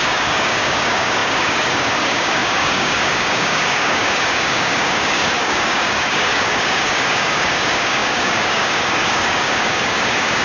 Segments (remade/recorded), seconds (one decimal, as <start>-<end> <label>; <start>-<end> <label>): 0.0-10.4 remade